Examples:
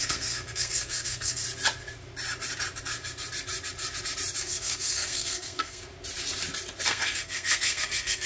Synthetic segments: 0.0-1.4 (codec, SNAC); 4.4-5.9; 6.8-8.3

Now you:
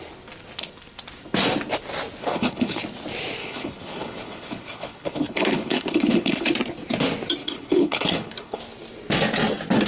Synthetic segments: 2.2-2.8 (codec, HILCodec); 3.4-6.5; 7.4-8.6

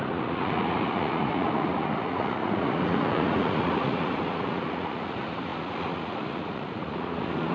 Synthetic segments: 0.0-7.5 (vocoder, Vocos)

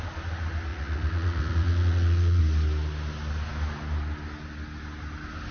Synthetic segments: 0.7-2.4 (vocoder, Vocos)

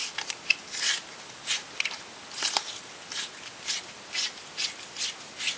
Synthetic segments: none

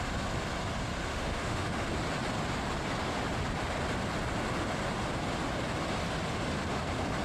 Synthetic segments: 1.1-1.9 (autoencoder, DAC-VAE)

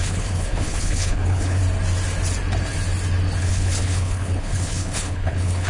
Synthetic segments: 0.0-1.6 (codec, HILCodec); 3.4-5.7